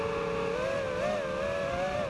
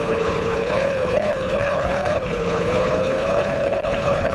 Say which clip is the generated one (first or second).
second